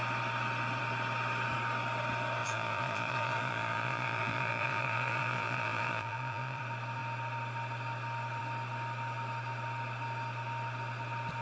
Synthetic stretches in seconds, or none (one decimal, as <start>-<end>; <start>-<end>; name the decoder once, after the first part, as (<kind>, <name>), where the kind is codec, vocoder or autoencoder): 2.4-6.6 (vocoder, Vocos)